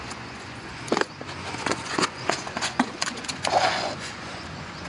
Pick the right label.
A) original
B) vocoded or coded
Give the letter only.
B